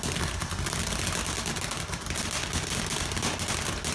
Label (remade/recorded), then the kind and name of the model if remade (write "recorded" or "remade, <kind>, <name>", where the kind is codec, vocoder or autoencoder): recorded